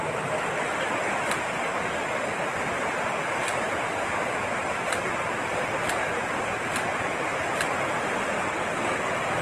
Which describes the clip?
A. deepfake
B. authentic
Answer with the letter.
B